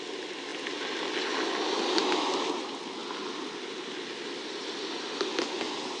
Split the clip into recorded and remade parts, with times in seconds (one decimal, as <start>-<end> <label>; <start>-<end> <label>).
0.0-6.0 recorded